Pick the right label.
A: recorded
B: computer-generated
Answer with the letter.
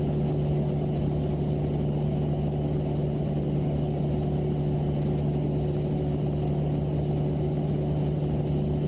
A